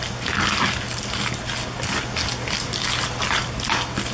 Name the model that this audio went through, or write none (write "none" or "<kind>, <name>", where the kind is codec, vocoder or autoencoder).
none